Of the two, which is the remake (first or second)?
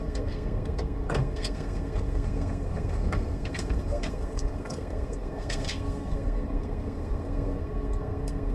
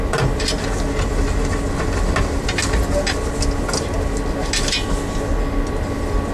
first